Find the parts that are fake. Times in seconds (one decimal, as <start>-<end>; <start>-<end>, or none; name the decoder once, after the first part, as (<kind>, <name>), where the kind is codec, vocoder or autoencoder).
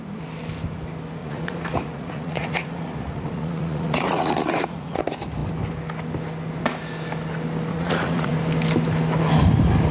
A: 1.2-5.0 (vocoder, Vocos); 7.7-8.3